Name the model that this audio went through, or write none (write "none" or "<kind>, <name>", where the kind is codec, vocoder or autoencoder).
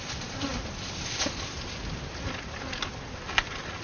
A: none